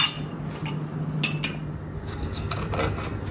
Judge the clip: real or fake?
real